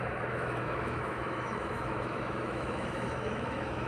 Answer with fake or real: fake